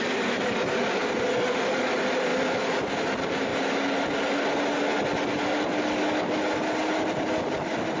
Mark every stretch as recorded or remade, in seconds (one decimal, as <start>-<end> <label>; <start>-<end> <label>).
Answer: 0.0-1.0 recorded; 1.0-1.8 remade; 1.8-2.3 recorded; 2.3-2.9 remade; 2.9-8.0 recorded